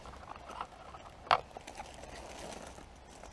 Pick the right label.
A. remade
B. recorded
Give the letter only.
B